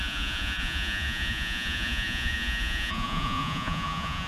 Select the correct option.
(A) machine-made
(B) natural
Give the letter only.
A